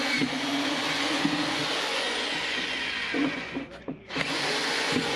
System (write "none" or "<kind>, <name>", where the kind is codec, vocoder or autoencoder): vocoder, Vocos